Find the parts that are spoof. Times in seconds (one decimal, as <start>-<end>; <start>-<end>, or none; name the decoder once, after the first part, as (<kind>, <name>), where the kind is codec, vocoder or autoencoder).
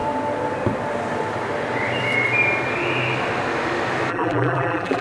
4.1-5.0 (vocoder, BigVGAN v2)